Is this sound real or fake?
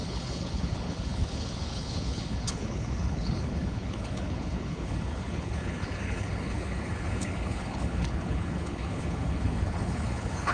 fake